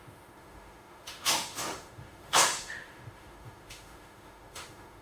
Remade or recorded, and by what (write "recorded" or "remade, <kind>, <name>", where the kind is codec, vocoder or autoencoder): remade, autoencoder, DAC-VAE